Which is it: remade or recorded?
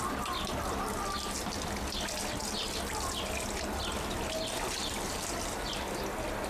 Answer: recorded